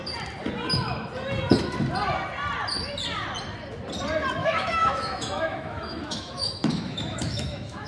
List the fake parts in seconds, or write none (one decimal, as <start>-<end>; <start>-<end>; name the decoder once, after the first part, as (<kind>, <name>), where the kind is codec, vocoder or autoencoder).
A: 4.4-7.9 (autoencoder, DAC-VAE)

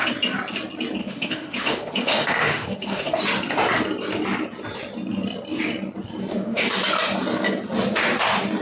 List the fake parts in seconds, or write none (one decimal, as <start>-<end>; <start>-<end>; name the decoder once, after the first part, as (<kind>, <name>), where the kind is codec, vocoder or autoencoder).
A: 1.0-3.2 (autoencoder, DAC-VAE); 6.3-6.8

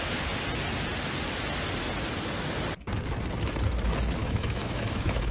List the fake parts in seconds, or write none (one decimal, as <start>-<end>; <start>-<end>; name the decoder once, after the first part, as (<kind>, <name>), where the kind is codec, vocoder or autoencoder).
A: 4.2-5.3 (autoencoder, DAC-VAE)

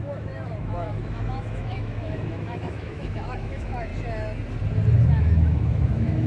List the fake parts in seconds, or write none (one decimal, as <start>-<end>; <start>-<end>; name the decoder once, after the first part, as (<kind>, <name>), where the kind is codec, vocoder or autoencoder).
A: 0.0-3.9 (autoencoder, DAC-VAE); 5.1-6.3

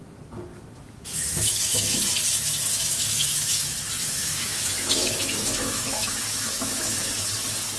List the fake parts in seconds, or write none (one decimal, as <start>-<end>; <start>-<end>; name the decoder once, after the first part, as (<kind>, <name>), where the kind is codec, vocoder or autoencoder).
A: 0.5-2.0 (autoencoder, DAC-VAE); 2.7-7.1